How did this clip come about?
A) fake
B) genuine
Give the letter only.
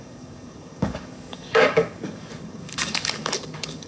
A